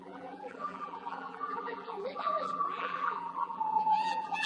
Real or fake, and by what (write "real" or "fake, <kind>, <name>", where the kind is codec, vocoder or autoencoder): fake, vocoder, BigVGAN v2